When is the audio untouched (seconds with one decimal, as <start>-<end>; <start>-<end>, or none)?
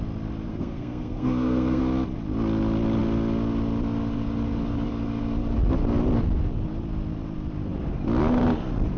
0.0-0.5; 1.8-9.0